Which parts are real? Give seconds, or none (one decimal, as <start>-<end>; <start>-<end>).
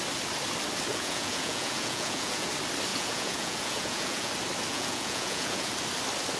0.0-0.9; 2.5-2.9; 4.3-4.7; 5.7-6.4